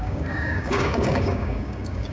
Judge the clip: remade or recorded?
remade